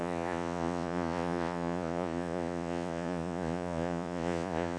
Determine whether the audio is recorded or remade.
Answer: remade